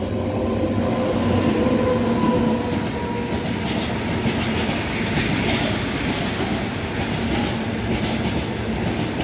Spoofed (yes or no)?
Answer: no